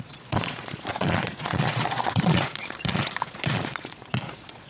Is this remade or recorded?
remade